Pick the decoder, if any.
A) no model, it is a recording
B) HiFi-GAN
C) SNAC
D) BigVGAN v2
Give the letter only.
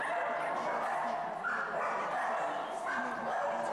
A